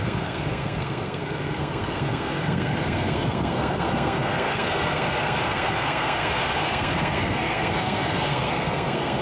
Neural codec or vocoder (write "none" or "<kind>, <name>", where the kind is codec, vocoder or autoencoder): codec, SNAC